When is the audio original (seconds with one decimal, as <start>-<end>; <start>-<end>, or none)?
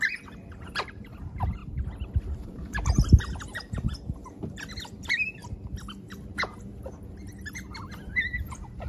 0.0-8.9